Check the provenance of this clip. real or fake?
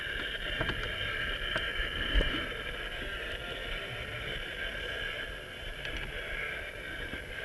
real